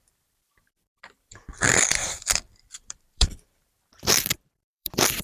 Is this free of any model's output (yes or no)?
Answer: no